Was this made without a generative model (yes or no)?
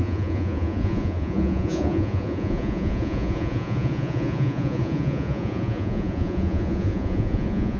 no